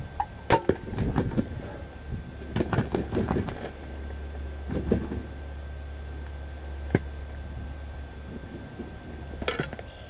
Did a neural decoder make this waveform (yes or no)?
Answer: no